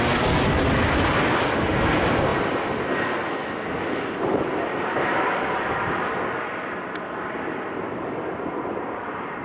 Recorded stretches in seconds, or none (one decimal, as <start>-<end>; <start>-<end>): 0.0-9.4